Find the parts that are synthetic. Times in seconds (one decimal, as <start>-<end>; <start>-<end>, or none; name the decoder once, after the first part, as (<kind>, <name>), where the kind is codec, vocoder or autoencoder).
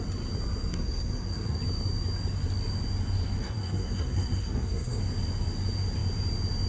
0.7-1.6 (codec, SNAC); 3.4-5.0